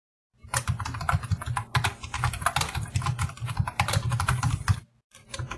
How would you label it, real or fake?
fake